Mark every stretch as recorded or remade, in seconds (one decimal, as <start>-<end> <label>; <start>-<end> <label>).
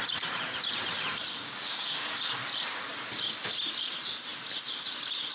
0.0-1.3 recorded; 1.3-2.2 remade; 2.2-5.3 recorded